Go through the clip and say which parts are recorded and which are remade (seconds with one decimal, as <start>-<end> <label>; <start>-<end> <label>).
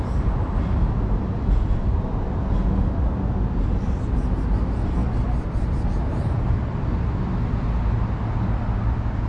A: 0.0-5.0 recorded; 5.0-6.4 remade; 6.4-9.3 recorded